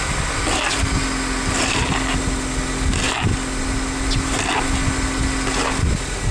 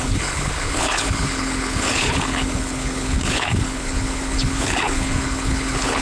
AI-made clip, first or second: second